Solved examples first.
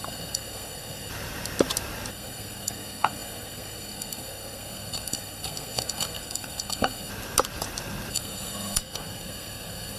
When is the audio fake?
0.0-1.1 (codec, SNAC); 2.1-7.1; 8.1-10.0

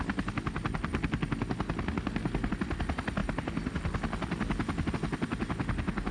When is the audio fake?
none

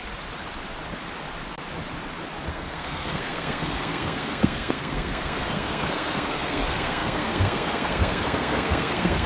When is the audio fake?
2.5-9.3 (codec, SNAC)

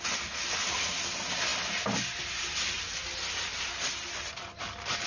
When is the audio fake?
none

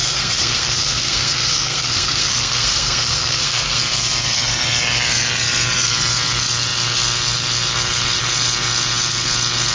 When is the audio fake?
0.0-3.8 (codec, SNAC)